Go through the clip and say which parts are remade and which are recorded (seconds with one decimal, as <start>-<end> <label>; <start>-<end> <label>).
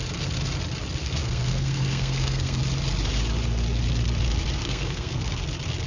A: 0.0-1.0 recorded; 1.0-2.6 remade; 2.6-4.6 recorded; 4.6-5.3 remade; 5.3-5.9 recorded